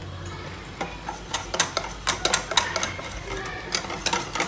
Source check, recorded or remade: recorded